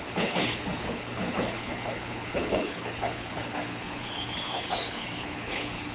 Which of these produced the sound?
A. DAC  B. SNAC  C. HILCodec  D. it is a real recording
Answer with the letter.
C